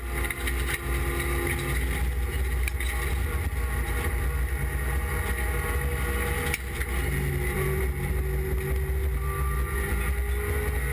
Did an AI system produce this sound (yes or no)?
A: no